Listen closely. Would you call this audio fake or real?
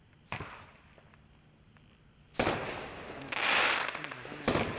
real